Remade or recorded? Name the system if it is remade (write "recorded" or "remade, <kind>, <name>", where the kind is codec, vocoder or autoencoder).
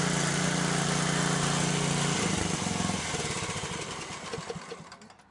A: recorded